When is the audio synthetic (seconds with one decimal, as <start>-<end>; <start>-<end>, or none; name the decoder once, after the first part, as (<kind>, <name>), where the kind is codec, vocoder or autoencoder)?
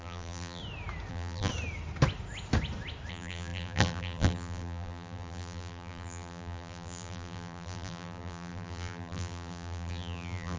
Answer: 0.0-0.6 (vocoder, BigVGAN v2); 1.1-1.5; 3.1-10.6